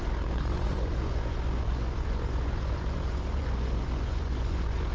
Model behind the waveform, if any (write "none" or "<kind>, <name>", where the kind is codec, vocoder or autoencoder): vocoder, Vocos